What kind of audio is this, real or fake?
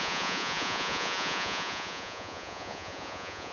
fake